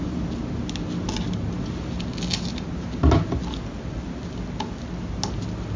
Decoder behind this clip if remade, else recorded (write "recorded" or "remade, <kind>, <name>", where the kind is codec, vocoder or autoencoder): recorded